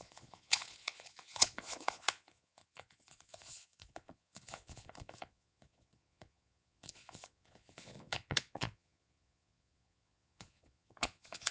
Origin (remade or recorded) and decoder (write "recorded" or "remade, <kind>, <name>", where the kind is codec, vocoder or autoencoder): remade, vocoder, Vocos